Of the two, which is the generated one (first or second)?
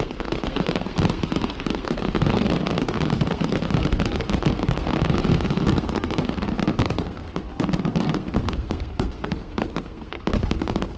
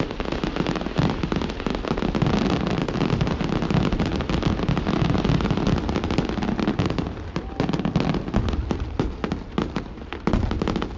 first